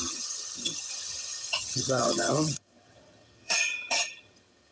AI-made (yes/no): yes